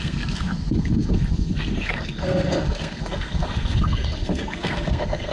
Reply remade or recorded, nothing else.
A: remade